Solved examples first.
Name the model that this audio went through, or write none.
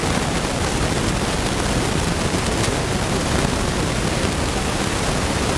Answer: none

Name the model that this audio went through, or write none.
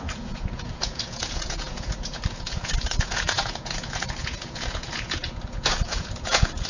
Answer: vocoder, Vocos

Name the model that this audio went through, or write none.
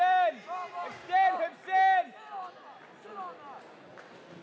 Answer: none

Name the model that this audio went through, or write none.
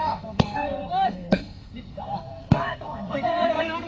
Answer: codec, SNAC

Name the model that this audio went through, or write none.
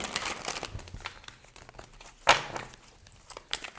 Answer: none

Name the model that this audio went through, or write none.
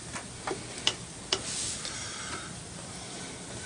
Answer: none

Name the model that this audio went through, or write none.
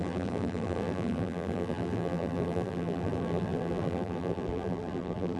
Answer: vocoder, BigVGAN v2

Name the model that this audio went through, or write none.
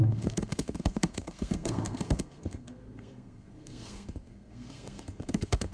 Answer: codec, SNAC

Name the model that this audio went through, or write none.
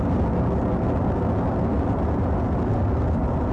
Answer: none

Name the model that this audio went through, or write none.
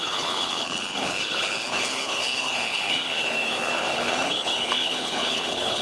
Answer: codec, HILCodec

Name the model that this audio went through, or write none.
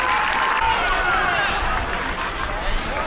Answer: none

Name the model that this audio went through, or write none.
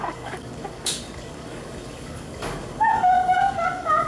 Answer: codec, DAC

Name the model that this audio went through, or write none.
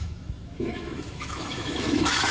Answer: autoencoder, DAC-VAE